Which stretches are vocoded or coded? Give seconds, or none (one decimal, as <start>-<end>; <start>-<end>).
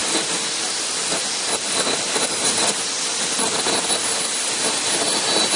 none